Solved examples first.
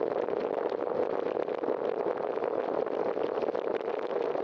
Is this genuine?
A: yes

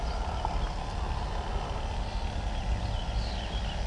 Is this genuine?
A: yes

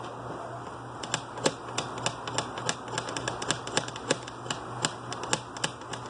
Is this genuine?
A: yes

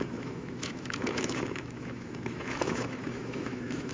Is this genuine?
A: no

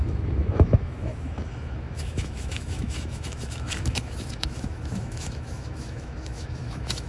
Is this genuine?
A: no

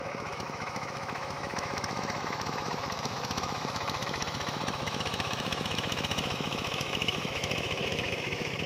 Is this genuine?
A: no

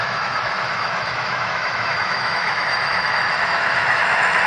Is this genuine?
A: no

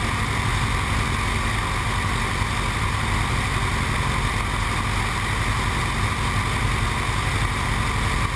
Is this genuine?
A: yes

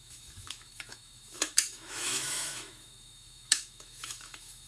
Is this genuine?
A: no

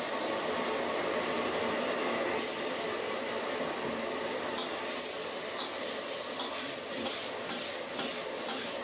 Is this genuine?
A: yes